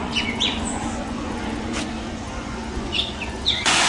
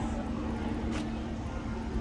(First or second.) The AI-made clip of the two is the first